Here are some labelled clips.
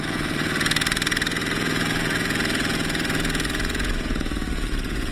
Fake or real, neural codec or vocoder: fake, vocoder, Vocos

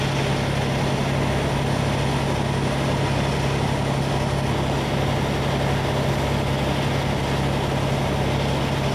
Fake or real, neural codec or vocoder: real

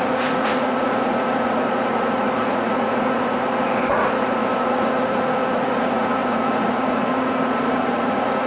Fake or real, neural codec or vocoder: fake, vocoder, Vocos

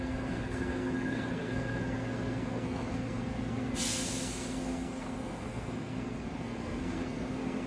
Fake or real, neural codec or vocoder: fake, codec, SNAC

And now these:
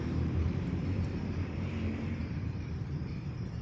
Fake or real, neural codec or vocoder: fake, vocoder, BigVGAN v2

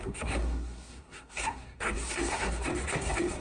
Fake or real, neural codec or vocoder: fake, codec, SNAC